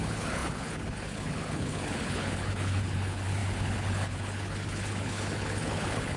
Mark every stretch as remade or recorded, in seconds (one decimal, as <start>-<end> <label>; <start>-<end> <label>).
0.0-6.2 remade